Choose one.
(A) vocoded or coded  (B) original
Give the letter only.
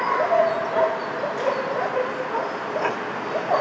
B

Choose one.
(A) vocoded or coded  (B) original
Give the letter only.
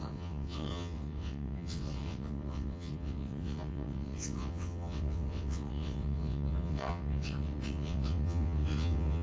A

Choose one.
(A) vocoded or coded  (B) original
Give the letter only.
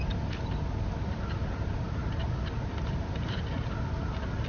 B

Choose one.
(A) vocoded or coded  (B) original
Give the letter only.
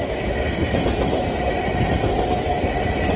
B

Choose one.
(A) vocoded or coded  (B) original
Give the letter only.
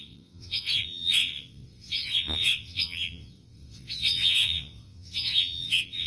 A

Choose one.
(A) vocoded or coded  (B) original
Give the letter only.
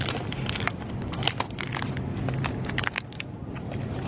B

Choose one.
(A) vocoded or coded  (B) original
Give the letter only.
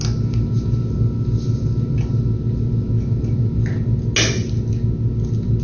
B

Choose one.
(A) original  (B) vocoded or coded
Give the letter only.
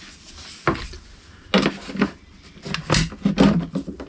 A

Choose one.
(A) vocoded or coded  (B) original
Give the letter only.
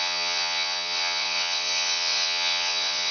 A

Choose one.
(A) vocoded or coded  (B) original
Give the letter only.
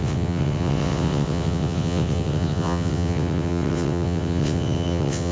A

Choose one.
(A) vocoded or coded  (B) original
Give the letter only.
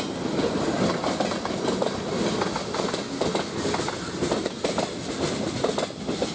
B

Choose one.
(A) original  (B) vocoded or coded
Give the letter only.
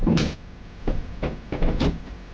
A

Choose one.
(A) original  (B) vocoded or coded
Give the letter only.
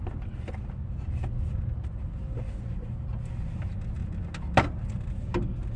A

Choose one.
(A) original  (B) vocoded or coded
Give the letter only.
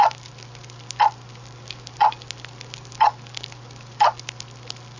A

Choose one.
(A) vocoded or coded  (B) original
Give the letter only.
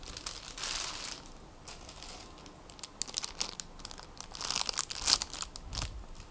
B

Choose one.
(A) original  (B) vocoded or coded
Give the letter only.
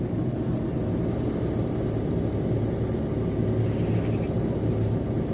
A